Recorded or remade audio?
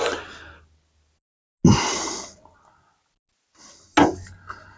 recorded